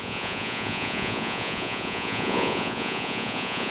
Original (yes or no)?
no